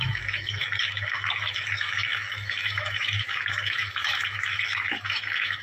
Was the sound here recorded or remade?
remade